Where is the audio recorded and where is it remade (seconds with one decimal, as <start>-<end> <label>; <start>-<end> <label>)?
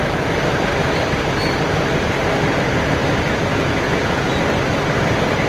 0.0-3.5 recorded; 3.5-4.3 remade; 4.3-5.5 recorded